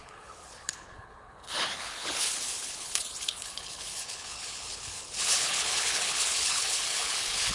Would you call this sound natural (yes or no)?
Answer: no